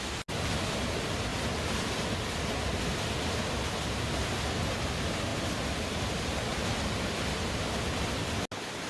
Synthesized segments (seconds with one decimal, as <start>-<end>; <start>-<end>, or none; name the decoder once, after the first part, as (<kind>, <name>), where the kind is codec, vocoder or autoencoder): none